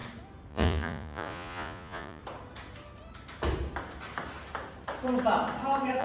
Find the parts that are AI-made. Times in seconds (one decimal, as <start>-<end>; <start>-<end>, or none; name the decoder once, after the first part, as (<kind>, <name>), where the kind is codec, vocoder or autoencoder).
0.5-2.2 (vocoder, Vocos)